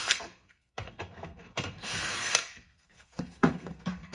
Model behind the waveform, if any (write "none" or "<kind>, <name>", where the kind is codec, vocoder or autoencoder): codec, SNAC